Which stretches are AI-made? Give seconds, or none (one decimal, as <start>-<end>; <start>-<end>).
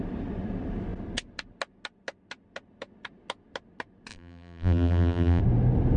4.1-5.4